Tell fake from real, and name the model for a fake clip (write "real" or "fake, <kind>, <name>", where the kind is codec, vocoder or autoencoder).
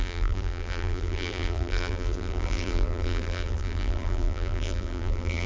fake, vocoder, BigVGAN v2